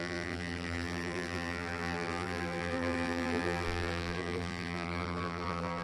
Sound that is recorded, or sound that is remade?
remade